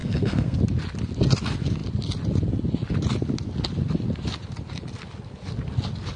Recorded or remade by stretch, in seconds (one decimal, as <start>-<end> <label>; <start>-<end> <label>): 0.0-0.6 remade; 0.6-6.2 recorded